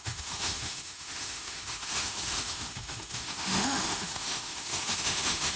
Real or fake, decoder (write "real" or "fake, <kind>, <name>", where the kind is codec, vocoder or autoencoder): fake, autoencoder, DAC-VAE